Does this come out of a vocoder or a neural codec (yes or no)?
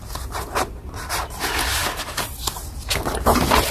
no